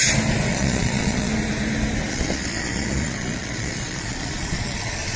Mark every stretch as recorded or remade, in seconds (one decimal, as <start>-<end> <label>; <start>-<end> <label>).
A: 0.0-0.5 recorded; 0.5-1.3 remade; 1.3-2.1 recorded; 2.1-5.2 remade